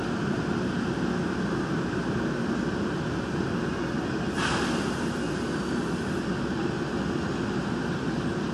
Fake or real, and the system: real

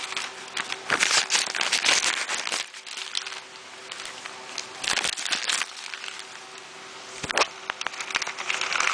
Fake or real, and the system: real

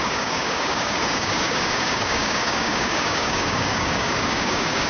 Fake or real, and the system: fake, codec, DAC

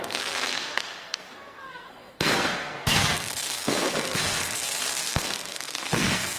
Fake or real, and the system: fake, codec, SNAC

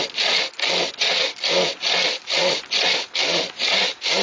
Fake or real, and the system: real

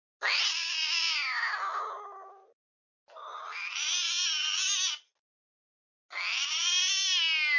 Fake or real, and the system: real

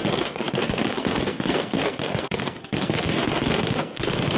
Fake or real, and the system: fake, codec, SNAC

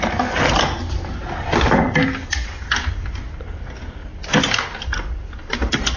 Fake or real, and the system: real